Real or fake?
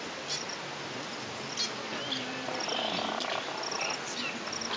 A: real